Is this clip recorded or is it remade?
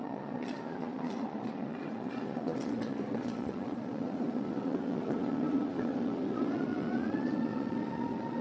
remade